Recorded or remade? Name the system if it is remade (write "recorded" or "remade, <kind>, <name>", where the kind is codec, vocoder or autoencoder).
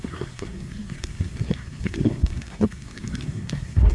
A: remade, codec, SNAC